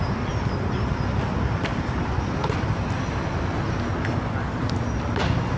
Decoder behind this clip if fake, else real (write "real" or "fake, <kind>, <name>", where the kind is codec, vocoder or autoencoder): real